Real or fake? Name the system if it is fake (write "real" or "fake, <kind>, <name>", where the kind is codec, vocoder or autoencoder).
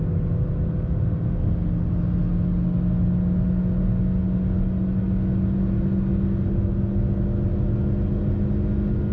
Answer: real